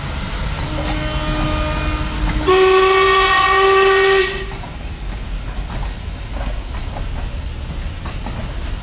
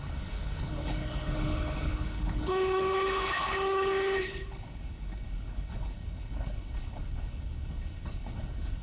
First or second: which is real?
first